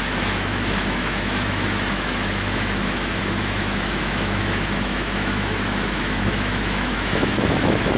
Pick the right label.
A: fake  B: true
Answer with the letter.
A